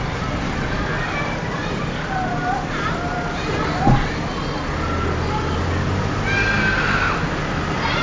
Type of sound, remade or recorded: recorded